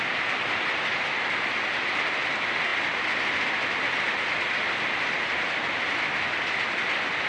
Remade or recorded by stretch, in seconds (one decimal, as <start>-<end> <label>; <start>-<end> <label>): 0.0-7.3 recorded